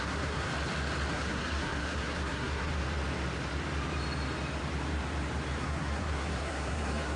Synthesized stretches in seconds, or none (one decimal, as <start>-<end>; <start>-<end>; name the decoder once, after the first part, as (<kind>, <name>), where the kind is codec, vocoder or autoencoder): 0.0-0.5 (codec, SNAC); 1.1-2.7; 5.6-7.2